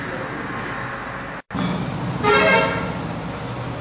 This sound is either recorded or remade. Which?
recorded